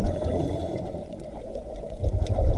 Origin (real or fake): fake